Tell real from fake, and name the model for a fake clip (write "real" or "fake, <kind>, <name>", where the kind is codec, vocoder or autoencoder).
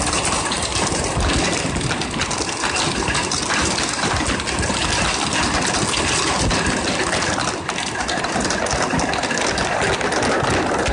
real